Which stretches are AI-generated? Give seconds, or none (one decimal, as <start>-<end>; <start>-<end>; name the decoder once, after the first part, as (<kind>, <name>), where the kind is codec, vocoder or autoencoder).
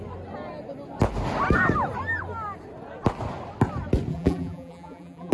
4.1-5.3 (vocoder, BigVGAN v2)